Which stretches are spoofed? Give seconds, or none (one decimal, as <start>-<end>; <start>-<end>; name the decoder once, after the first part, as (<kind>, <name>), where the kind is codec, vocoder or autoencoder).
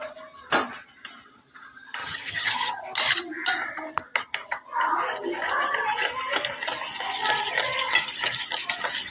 2.0-2.8 (vocoder, HiFi-GAN)